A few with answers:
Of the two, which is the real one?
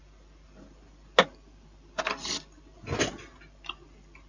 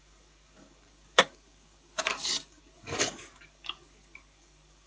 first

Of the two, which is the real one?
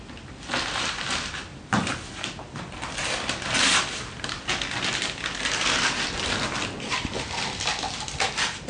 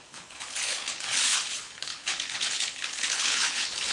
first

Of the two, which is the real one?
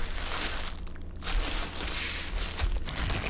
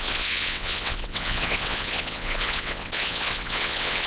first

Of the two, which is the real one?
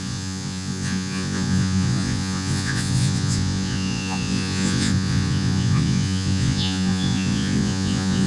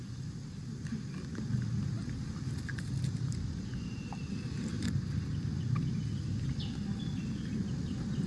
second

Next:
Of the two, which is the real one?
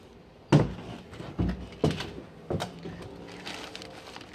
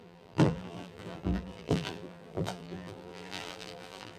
first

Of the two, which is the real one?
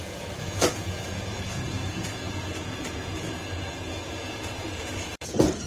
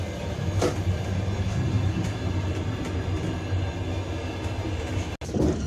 second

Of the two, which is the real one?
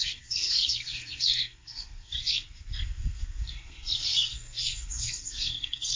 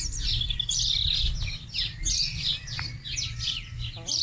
second